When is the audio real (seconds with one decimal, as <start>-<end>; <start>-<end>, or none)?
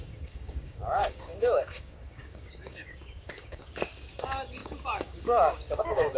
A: none